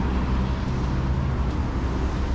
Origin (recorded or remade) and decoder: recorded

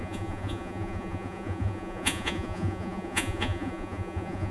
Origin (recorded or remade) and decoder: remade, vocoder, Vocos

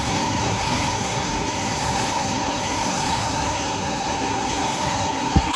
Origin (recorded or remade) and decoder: remade, codec, SNAC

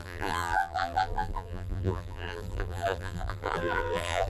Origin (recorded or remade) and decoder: remade, vocoder, BigVGAN v2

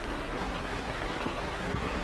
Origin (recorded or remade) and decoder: remade, codec, SNAC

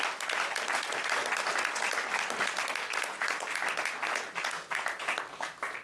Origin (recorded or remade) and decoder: recorded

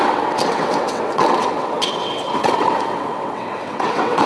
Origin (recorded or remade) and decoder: remade, vocoder, WaveNeXt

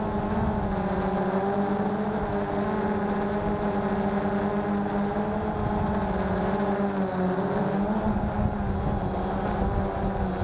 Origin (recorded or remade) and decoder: recorded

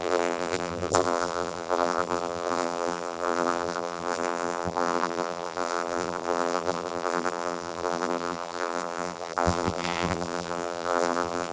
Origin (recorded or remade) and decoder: remade, vocoder, BigVGAN v2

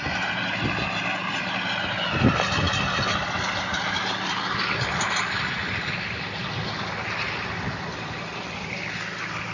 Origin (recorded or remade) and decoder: recorded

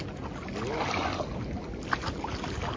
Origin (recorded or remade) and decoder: recorded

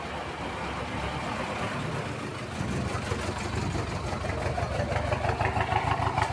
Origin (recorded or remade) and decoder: recorded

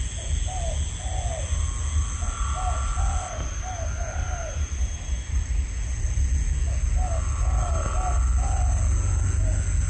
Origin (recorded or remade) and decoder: recorded